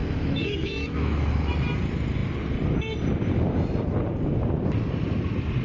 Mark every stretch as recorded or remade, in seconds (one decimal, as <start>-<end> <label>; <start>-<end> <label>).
0.0-1.5 remade; 1.5-5.6 recorded